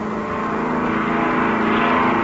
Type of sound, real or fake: real